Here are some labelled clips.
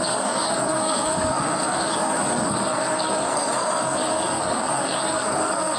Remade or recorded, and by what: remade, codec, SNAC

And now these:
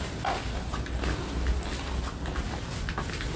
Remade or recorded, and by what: recorded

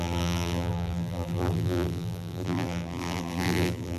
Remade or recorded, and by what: remade, vocoder, BigVGAN v2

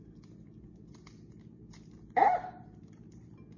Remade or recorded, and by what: remade, vocoder, BigVGAN v2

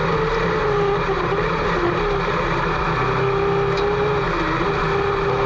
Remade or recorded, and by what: recorded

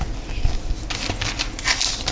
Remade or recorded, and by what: recorded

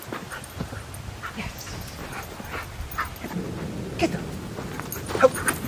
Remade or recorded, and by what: recorded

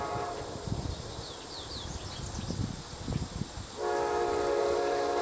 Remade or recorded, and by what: recorded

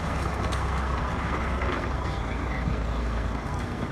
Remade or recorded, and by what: remade, codec, SNAC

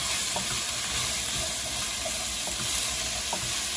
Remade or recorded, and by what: recorded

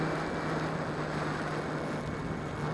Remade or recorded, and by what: recorded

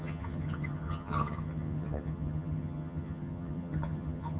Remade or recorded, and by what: remade, vocoder, HiFi-GAN